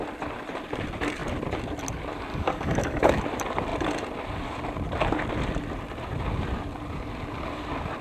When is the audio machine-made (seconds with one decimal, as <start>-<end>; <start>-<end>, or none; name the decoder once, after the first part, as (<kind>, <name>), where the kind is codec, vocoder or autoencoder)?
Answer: 2.3-3.2 (codec, DAC)